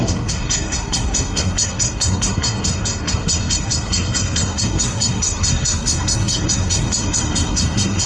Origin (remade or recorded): remade